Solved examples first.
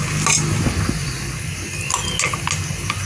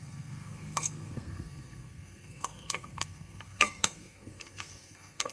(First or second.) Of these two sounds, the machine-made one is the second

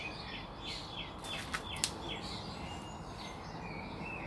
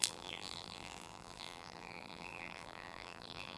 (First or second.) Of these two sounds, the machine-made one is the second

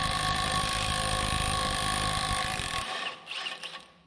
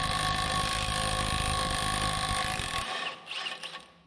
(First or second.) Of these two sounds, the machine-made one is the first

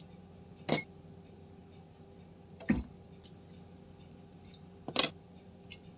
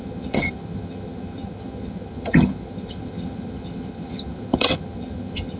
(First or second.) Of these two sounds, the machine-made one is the second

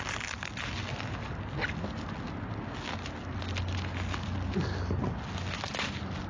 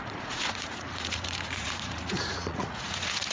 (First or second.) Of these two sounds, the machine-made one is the second